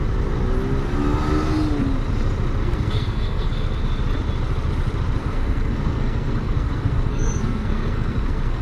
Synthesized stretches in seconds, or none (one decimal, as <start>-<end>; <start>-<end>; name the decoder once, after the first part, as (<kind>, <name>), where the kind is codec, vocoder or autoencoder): 2.6-3.8 (codec, SNAC); 5.2-8.6